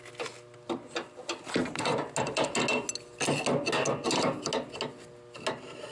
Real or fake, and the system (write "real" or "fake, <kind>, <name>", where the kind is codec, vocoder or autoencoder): real